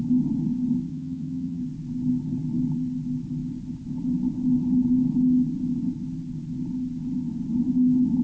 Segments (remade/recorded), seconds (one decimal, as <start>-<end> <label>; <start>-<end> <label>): 0.0-0.9 recorded; 0.9-1.6 remade; 1.6-8.2 recorded